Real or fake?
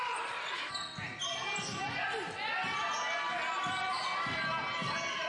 real